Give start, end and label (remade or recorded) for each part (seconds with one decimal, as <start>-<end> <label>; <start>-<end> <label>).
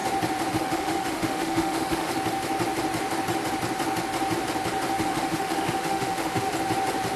0.0-0.5 recorded; 0.5-2.1 remade; 2.1-5.0 recorded; 5.0-6.5 remade; 6.5-7.2 recorded